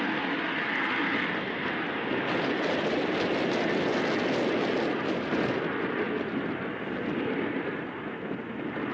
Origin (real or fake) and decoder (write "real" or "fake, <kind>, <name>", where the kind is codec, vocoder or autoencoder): real